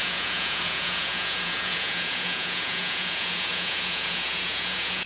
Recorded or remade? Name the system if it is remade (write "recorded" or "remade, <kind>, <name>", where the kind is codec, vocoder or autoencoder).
remade, vocoder, Vocos